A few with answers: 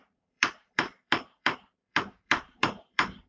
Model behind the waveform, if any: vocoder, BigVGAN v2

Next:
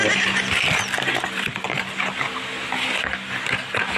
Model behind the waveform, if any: none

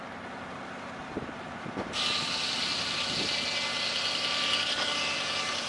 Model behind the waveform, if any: none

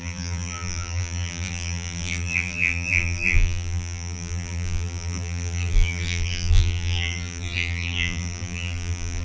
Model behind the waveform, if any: vocoder, BigVGAN v2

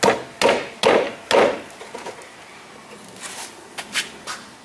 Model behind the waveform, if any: none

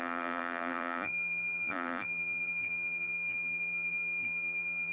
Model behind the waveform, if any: vocoder, BigVGAN v2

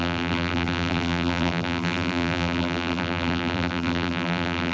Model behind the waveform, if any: vocoder, BigVGAN v2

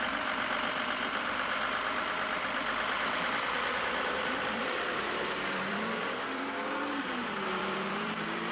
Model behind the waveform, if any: vocoder, BigVGAN v2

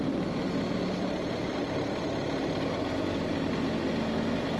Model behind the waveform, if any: vocoder, BigVGAN v2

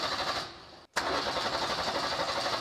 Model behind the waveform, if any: none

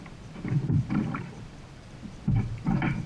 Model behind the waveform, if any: vocoder, BigVGAN v2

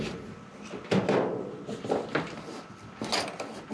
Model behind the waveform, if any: none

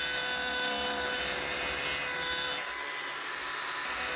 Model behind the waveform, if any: none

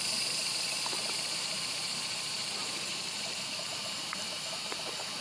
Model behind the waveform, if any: vocoder, BigVGAN v2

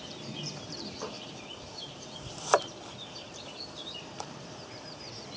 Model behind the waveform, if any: vocoder, BigVGAN v2